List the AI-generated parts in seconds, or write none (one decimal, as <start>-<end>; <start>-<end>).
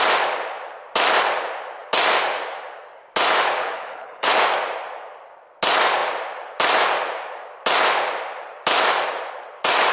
3.6-4.3